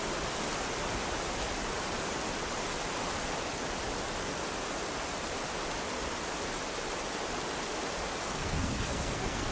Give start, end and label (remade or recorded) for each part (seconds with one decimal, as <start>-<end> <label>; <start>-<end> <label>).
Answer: 0.0-8.2 recorded; 8.2-9.5 remade